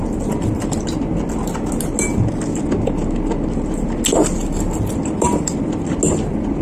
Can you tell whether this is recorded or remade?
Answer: recorded